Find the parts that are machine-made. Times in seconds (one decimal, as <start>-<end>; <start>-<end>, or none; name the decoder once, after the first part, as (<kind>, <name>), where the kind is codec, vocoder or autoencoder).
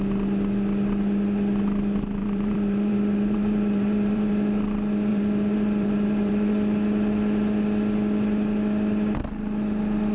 2.2-4.3 (vocoder, BigVGAN v2); 5.1-6.5